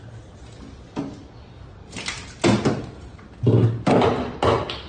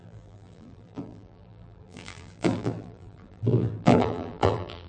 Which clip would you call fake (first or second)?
second